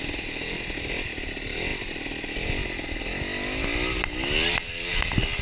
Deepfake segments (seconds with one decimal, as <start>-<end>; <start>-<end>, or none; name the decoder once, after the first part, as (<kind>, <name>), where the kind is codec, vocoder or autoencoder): none